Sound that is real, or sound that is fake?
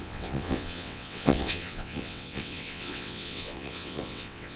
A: fake